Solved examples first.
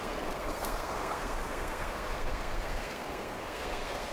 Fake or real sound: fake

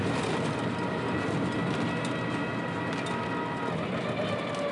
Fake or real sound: real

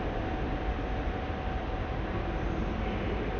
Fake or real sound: real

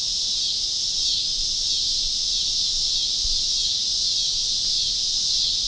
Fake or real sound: real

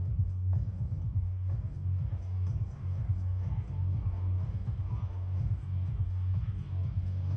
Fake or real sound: fake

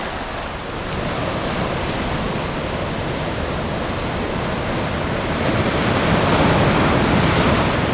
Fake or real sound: real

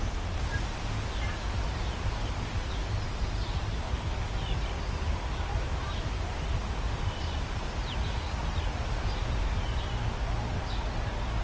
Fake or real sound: real